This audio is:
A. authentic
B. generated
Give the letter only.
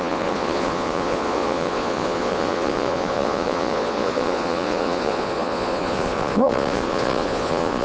B